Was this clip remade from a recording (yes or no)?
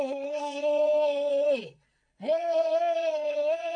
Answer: yes